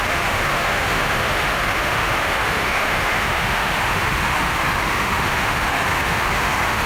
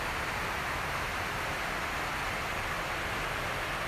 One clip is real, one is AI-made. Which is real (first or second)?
second